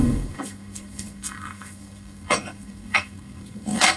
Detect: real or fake fake